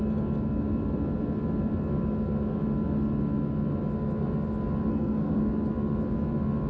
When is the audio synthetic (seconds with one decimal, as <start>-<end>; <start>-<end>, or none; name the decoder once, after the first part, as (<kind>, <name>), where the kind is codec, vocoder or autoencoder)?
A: 4.9-5.4 (codec, SNAC)